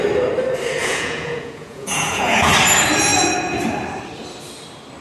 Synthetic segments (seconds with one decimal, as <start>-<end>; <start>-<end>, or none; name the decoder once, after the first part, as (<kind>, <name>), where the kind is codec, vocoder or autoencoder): 0.8-2.5 (vocoder, Vocos)